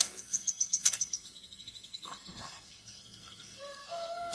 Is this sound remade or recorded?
remade